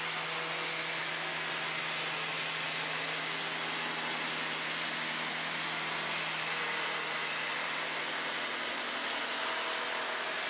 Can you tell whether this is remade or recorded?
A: recorded